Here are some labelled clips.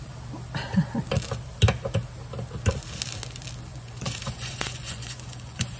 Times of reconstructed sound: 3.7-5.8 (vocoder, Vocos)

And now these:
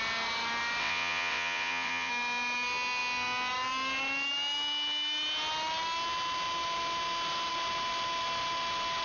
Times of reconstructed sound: 0.8-2.1 (vocoder, WaveNeXt)

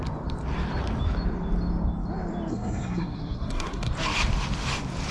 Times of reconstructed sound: 2.5-3.9 (codec, SNAC)

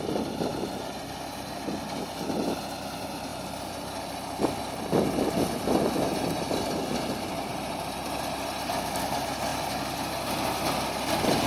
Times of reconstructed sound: 3.3-6.9 (vocoder, BigVGAN v2); 7.5-8.7; 9.5-11.1

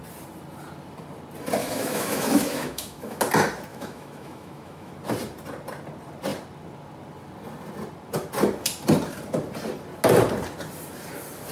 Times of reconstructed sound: 1.6-3.2 (autoencoder, DAC-VAE); 3.7-4.9

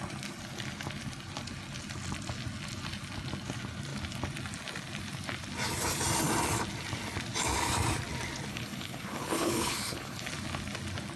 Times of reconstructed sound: 8.5-10.3 (codec, HILCodec)